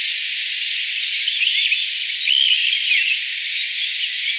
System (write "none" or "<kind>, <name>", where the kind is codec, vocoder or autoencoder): none